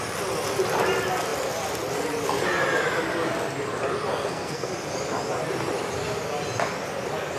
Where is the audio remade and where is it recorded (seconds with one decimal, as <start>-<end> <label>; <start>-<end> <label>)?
0.0-4.1 recorded; 4.1-4.7 remade; 4.7-7.4 recorded

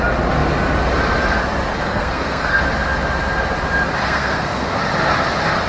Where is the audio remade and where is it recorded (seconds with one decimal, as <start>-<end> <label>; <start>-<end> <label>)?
0.0-1.9 recorded; 1.9-2.6 remade; 2.6-4.0 recorded; 4.0-4.8 remade; 4.8-5.7 recorded

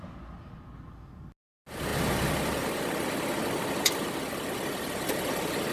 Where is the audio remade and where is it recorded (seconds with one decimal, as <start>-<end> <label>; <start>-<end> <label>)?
0.0-5.7 recorded

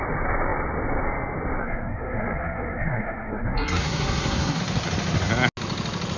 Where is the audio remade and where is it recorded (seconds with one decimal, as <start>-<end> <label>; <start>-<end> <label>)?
0.0-1.6 recorded; 1.6-4.6 remade; 4.6-6.2 recorded

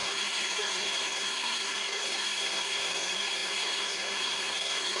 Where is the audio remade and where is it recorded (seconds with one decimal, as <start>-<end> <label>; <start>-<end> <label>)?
0.0-5.0 remade

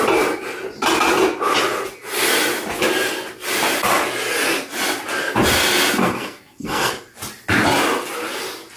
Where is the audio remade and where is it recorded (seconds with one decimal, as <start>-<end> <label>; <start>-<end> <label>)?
0.0-6.0 recorded; 6.0-6.9 remade; 6.9-8.8 recorded